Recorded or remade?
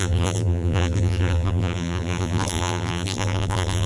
remade